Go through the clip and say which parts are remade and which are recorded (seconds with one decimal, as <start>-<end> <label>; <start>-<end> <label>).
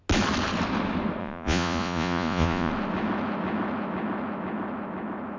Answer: 0.0-1.2 recorded; 1.2-2.7 remade; 2.7-5.4 recorded